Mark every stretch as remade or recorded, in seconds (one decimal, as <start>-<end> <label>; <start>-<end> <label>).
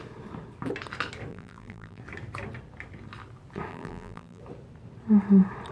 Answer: 0.0-1.3 recorded; 1.3-2.0 remade; 2.0-3.7 recorded; 3.7-4.4 remade; 4.4-5.7 recorded